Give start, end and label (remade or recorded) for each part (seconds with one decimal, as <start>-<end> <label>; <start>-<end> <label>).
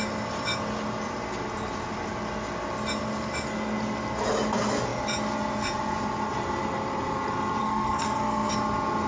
0.0-7.6 recorded; 7.6-8.5 remade; 8.5-9.1 recorded